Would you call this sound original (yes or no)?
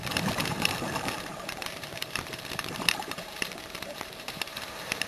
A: no